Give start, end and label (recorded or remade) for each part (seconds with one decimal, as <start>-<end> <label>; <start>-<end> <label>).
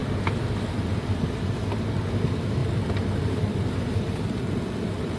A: 0.0-1.2 remade; 1.2-2.6 recorded; 2.6-4.2 remade; 4.2-5.2 recorded